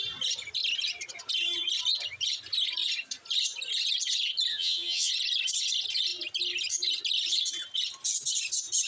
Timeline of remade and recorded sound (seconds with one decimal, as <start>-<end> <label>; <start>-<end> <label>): 0.0-4.5 recorded; 4.5-5.1 remade; 5.1-8.9 recorded